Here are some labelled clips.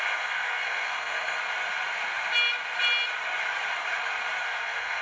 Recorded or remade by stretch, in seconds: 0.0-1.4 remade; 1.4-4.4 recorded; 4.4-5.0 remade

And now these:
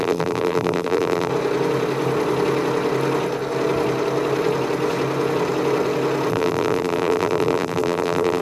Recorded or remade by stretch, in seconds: 0.0-1.3 remade; 1.3-6.3 recorded; 6.3-8.4 remade

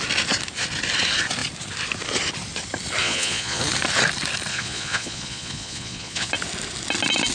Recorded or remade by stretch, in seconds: 0.0-3.0 recorded; 3.0-3.6 remade; 3.6-4.5 recorded; 4.5-6.3 remade; 6.3-7.3 recorded